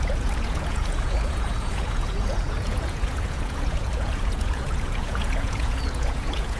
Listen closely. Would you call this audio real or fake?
fake